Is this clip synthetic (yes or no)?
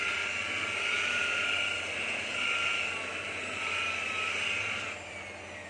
no